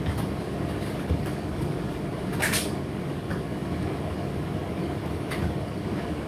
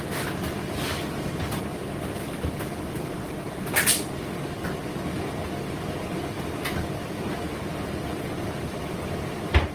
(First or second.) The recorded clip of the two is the second